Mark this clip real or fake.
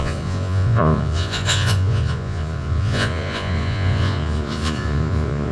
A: fake